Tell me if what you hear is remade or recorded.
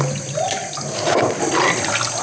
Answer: recorded